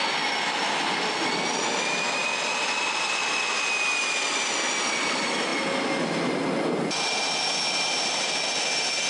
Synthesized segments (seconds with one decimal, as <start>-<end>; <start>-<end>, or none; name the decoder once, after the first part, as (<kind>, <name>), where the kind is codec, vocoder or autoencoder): none